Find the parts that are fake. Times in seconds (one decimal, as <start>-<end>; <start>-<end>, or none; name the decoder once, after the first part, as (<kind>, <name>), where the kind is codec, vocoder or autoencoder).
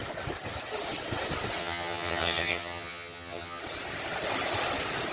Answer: 1.6-3.6 (vocoder, HiFi-GAN)